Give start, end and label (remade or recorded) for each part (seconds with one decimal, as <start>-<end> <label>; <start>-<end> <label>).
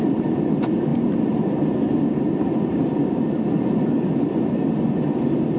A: 0.0-5.6 recorded